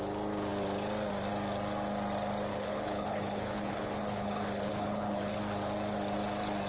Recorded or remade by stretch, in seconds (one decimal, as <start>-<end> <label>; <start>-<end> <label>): 0.0-2.5 recorded; 2.5-5.4 remade; 5.4-6.7 recorded